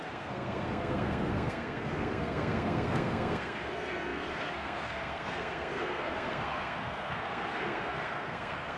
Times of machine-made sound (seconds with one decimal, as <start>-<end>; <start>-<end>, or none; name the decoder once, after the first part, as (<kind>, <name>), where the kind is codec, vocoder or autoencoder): 0.0-8.8 (codec, SNAC)